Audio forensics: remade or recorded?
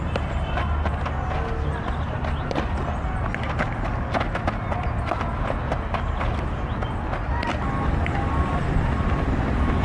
recorded